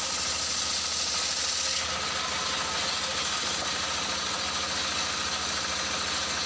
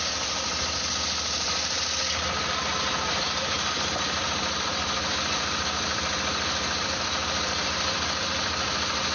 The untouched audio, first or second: first